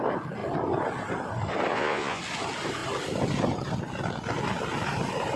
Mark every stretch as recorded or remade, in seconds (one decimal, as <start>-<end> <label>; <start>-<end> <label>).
0.0-1.7 recorded; 1.7-2.2 remade; 2.2-5.4 recorded